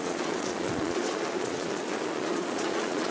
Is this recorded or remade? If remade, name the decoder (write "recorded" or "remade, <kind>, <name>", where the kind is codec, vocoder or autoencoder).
remade, vocoder, Vocos